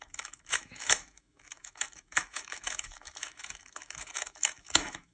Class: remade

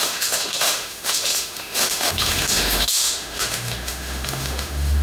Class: remade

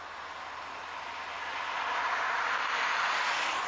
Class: recorded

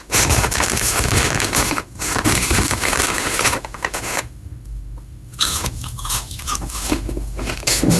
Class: remade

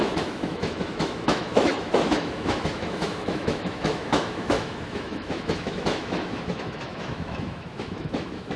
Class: remade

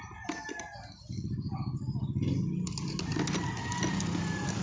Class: recorded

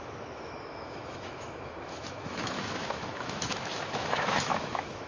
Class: remade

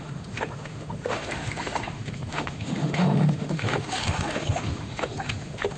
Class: remade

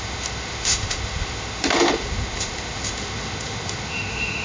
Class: remade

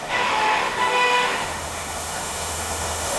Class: remade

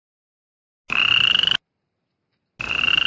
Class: recorded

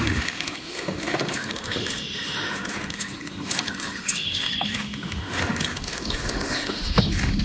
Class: remade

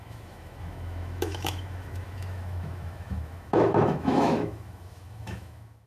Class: remade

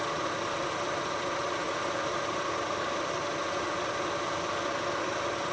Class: recorded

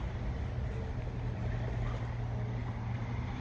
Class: recorded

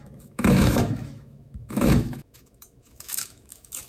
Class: remade